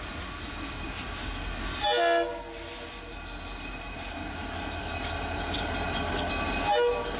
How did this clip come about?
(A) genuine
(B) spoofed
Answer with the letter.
A